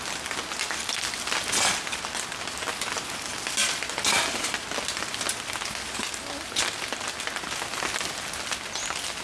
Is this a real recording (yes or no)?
yes